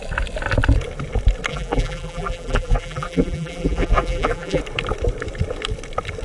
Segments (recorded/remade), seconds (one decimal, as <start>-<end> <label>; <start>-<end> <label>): 0.0-1.5 recorded; 1.5-4.6 remade; 4.6-6.2 recorded